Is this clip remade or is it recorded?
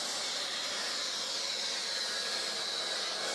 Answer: recorded